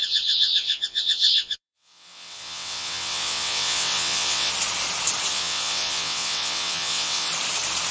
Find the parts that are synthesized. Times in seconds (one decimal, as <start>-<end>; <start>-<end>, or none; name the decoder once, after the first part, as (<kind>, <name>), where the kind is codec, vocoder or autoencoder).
0.0-4.5 (vocoder, WaveNeXt); 5.3-7.3

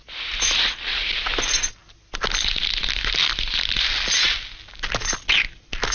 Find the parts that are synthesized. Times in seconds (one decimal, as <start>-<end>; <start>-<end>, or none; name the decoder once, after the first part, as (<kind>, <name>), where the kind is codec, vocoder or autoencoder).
none

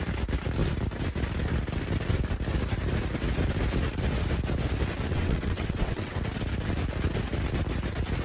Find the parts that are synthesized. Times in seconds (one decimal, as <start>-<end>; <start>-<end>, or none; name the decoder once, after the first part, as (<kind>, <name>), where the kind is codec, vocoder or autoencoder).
5.1-6.2 (vocoder, WaveNeXt)

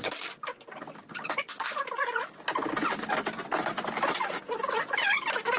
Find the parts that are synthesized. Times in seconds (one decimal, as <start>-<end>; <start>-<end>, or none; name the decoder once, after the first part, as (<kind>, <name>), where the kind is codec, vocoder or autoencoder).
none